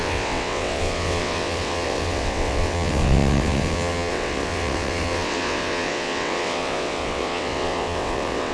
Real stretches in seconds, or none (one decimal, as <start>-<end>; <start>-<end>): none